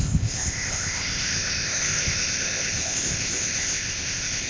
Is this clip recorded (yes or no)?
no